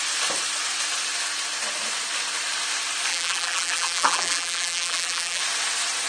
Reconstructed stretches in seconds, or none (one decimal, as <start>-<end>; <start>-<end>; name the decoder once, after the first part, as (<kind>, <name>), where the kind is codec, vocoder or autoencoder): 3.1-5.4 (vocoder, BigVGAN v2)